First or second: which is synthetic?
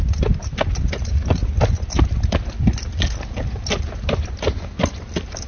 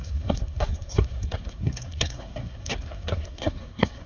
second